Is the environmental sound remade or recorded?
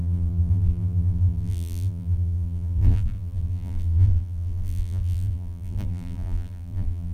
remade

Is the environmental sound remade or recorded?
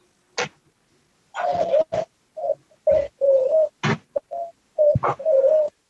recorded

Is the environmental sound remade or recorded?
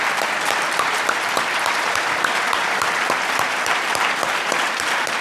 remade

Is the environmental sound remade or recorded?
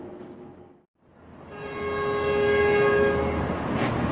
recorded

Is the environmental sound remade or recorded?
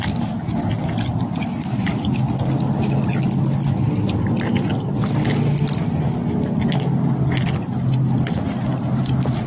recorded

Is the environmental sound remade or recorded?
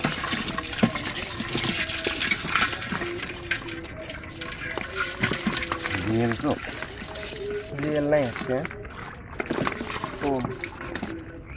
recorded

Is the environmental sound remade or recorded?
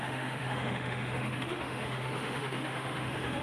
remade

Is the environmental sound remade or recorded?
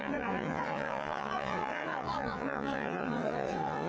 remade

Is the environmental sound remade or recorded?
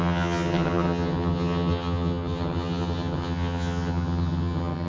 remade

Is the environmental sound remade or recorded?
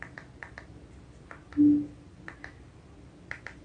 recorded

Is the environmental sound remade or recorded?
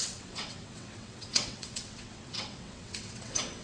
remade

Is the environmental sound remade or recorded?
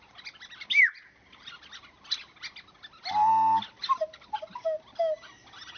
recorded